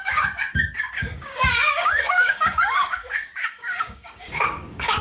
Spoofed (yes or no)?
yes